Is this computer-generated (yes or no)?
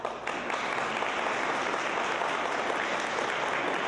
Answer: no